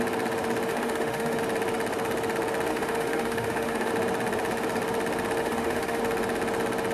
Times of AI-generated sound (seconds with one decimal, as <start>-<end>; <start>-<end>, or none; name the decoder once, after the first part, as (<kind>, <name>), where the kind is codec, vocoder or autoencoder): 0.7-1.4 (autoencoder, DAC-VAE); 2.7-3.9; 5.4-6.0